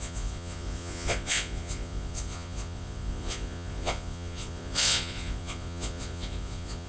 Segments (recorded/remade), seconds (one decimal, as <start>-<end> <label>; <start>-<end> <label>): 0.0-6.9 remade